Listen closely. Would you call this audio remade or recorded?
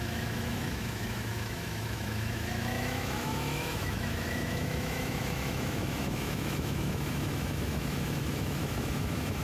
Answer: remade